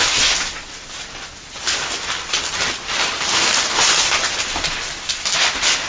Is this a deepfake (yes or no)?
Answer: no